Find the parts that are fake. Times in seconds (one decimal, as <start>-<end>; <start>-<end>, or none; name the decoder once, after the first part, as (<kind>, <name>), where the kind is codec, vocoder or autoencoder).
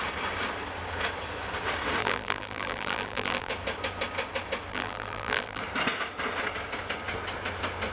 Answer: 2.0-3.5 (vocoder, BigVGAN v2); 4.7-5.6